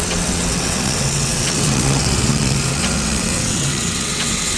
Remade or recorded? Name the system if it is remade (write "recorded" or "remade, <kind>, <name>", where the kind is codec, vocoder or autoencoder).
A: remade, vocoder, WaveNeXt